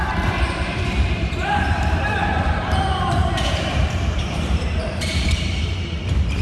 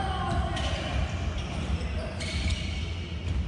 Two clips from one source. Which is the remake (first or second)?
first